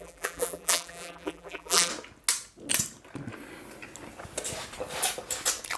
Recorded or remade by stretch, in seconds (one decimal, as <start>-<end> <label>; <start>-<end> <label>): 0.0-1.9 remade; 1.9-5.8 recorded